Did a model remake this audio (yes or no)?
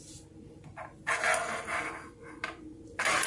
no